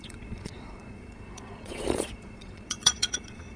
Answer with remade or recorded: remade